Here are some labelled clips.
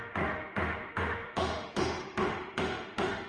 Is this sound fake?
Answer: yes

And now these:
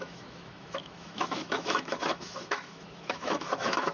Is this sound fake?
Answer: yes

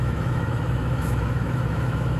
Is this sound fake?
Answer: yes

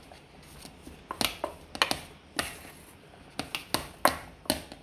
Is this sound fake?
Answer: no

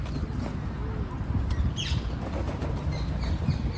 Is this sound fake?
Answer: no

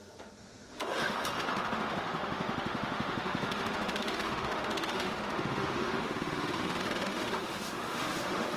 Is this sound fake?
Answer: yes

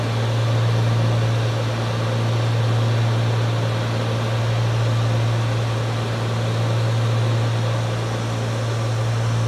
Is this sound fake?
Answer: no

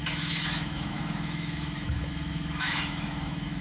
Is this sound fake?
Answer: yes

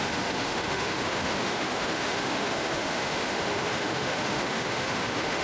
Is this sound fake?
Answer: yes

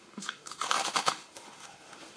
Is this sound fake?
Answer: yes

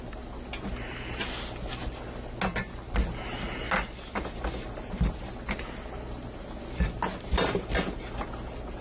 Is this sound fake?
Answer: no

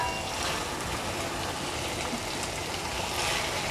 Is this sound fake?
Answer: no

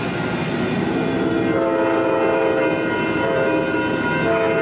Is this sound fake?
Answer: no